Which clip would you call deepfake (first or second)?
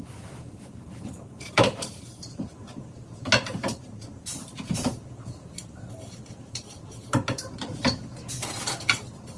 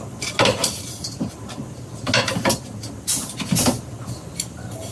first